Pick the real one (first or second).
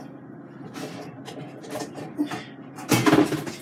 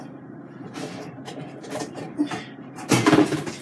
first